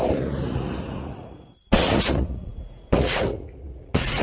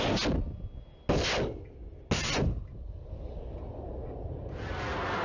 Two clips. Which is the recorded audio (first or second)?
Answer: second